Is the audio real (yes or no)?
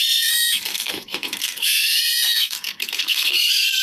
no